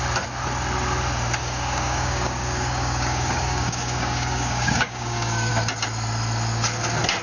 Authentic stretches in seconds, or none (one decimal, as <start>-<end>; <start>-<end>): 0.0-1.4; 5.5-7.2